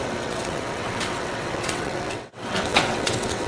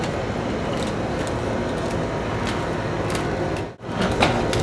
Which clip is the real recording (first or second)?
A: second